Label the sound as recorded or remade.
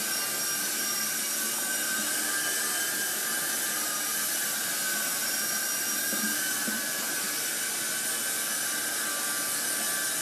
recorded